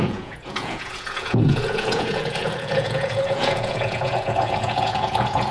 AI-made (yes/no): yes